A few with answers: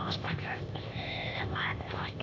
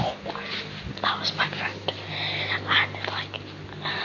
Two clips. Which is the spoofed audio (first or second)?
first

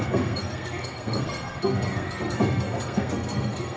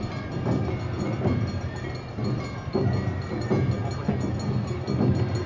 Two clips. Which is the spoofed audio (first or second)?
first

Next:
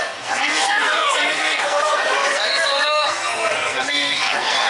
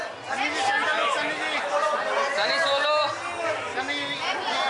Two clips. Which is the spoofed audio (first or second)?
first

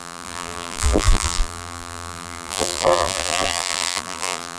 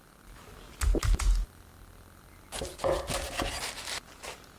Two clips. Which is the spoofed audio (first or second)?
first